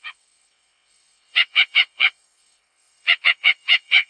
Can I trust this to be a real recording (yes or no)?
no